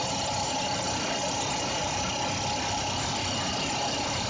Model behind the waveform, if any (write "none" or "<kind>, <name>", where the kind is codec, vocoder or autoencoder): vocoder, BigVGAN v2